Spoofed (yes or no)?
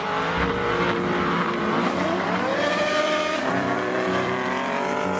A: yes